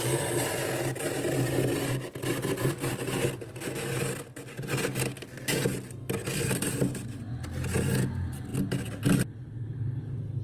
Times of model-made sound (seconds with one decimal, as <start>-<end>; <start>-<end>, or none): none